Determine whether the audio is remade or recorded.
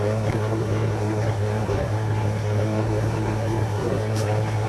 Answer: remade